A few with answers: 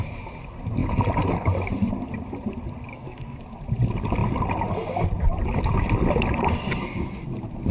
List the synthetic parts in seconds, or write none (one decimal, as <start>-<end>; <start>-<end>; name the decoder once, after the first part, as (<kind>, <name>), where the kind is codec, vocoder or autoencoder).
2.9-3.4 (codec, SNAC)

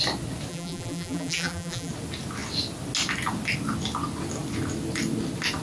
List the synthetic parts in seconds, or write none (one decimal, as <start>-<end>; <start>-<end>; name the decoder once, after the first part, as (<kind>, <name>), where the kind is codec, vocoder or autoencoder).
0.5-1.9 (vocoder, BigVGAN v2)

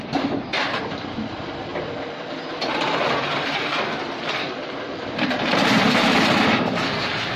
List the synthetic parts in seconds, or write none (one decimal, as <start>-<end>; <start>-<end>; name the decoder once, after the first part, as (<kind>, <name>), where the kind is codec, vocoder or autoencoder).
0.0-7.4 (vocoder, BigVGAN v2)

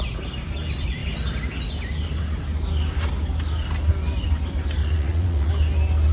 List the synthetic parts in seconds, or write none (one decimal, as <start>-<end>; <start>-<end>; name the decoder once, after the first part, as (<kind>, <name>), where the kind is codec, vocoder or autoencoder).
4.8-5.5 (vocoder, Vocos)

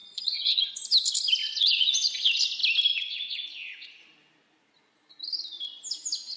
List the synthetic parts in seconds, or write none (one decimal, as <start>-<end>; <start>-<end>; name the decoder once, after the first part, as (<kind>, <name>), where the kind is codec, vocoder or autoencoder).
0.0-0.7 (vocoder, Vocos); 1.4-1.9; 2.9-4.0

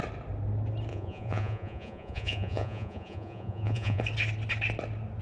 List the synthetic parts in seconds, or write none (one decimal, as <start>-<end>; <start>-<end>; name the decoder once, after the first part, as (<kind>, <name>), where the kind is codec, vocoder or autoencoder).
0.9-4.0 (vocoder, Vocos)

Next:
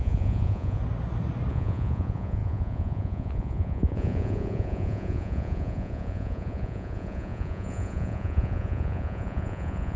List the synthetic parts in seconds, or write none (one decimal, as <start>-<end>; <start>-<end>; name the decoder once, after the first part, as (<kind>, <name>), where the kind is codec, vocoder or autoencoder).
0.0-0.8 (vocoder, Vocos); 1.5-10.0